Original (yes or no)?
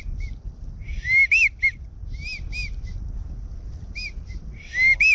yes